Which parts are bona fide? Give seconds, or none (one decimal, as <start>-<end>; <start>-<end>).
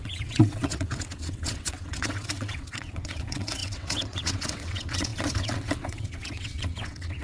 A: none